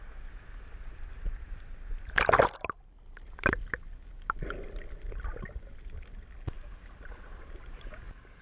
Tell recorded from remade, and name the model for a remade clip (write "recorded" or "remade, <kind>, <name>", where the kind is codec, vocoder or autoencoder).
recorded